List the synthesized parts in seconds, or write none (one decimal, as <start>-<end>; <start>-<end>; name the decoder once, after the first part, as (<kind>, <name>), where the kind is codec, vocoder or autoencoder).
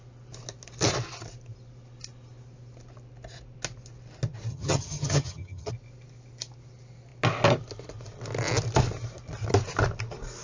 4.5-5.7 (vocoder, HiFi-GAN)